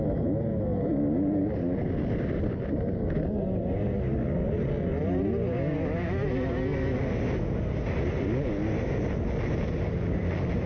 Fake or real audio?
real